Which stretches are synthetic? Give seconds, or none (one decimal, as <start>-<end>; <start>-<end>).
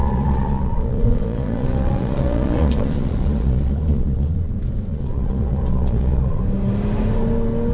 0.0-4.5; 4.9-6.4